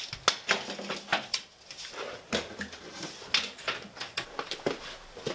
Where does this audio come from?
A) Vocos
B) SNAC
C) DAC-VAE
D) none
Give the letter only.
D